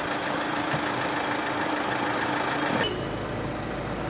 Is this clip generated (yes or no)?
no